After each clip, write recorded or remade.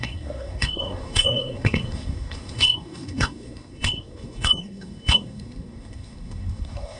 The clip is remade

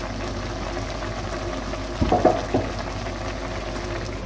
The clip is recorded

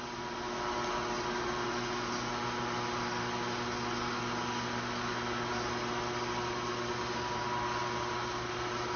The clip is recorded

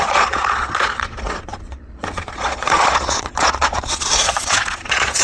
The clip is remade